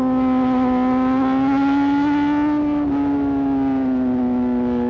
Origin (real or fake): real